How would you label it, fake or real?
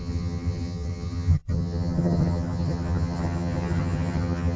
fake